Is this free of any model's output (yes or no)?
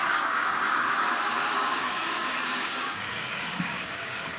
no